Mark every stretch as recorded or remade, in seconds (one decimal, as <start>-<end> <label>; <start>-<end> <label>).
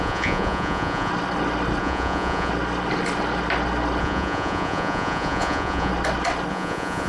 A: 0.0-1.1 remade; 1.1-1.8 recorded; 1.8-2.5 remade; 2.5-4.0 recorded; 4.0-5.9 remade; 5.9-6.5 recorded; 6.5-7.1 remade